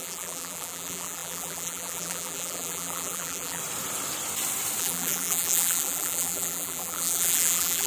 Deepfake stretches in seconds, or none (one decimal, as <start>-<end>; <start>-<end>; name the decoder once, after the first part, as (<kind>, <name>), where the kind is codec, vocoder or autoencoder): 0.0-3.6 (vocoder, BigVGAN v2); 4.8-7.9